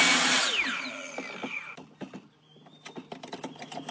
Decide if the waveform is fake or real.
real